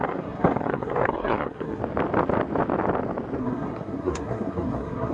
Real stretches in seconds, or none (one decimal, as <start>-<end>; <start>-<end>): 1.8-3.4